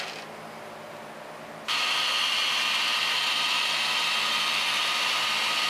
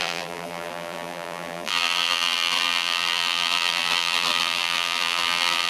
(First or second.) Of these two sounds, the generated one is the second